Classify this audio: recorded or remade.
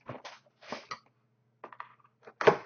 recorded